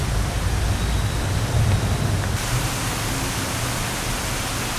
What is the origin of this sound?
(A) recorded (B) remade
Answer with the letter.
A